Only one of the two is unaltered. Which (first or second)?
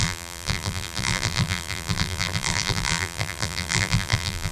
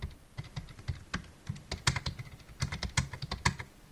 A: second